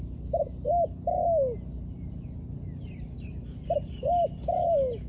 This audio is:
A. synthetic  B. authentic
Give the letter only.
B